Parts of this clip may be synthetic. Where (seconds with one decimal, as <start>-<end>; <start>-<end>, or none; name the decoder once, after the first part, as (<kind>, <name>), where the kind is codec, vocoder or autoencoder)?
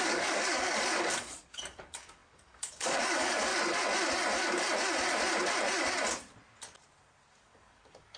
0.0-3.5 (codec, DAC); 7.3-8.2